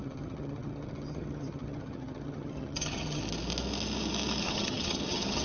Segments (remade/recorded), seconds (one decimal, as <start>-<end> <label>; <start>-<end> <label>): 0.0-3.2 remade; 3.2-4.4 recorded; 4.4-5.4 remade